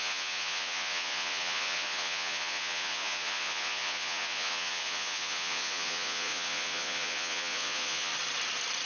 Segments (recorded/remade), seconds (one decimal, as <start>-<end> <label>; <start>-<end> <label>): 0.0-8.1 remade; 8.1-8.9 recorded